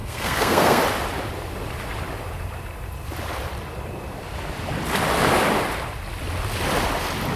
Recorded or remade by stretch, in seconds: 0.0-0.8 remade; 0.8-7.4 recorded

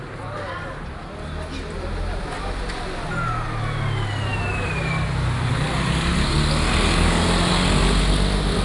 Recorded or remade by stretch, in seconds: 0.0-8.6 recorded

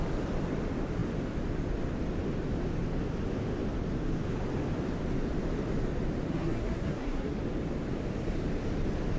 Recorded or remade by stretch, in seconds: 0.0-6.3 recorded; 6.3-7.4 remade; 7.4-9.2 recorded

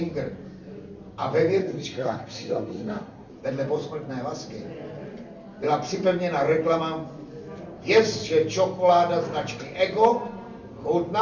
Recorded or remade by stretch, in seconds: 0.0-1.6 recorded; 1.6-3.3 remade; 3.3-11.2 recorded

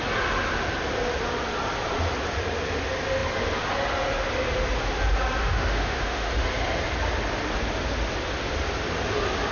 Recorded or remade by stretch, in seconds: 0.0-5.4 recorded; 5.4-6.3 remade; 6.3-9.5 recorded

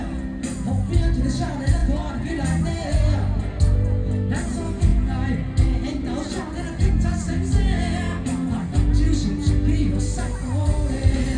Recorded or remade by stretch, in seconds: 0.0-11.4 recorded